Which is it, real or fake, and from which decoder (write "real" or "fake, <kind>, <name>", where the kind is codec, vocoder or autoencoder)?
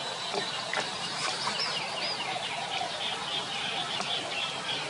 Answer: fake, vocoder, BigVGAN v2